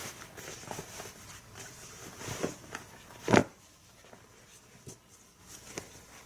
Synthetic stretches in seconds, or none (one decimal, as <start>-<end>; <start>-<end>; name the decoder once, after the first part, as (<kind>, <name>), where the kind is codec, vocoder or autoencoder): none